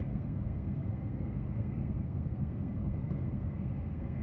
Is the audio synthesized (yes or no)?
yes